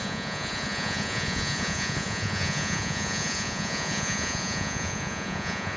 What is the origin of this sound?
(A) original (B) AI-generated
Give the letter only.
B